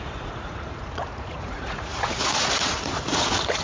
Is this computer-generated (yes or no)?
yes